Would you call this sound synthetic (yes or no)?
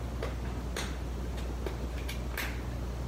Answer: no